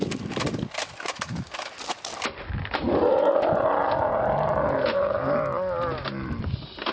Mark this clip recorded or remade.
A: recorded